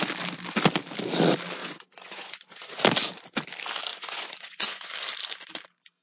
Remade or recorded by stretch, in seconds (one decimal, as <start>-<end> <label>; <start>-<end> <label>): 0.0-1.6 recorded; 1.6-2.8 remade; 2.8-3.9 recorded; 3.9-4.9 remade; 4.9-6.0 recorded